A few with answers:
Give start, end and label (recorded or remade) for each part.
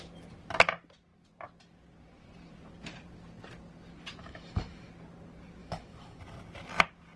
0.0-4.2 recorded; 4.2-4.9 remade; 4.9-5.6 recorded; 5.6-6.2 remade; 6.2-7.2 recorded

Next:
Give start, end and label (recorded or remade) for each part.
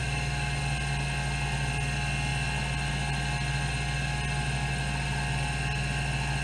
0.0-0.6 remade; 0.6-6.4 recorded